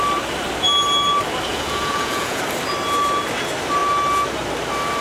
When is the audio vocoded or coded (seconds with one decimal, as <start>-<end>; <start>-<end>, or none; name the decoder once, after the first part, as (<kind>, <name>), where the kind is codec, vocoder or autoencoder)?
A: 1.5-2.4 (vocoder, Vocos)